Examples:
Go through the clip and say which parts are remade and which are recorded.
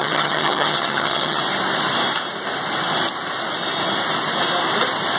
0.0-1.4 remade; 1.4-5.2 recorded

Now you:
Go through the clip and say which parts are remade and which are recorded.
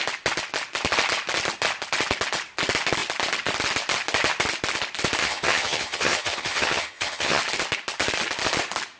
0.0-5.2 recorded; 5.2-7.4 remade; 7.4-9.0 recorded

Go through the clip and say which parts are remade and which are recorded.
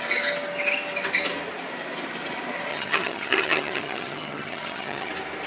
0.0-2.7 recorded; 2.7-5.1 remade; 5.1-5.5 recorded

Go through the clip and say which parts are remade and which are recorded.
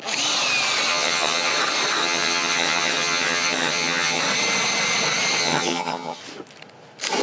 0.0-0.9 recorded; 0.9-1.5 remade; 1.5-2.0 recorded; 2.0-4.2 remade; 4.2-5.4 recorded; 5.4-6.2 remade; 6.2-7.2 recorded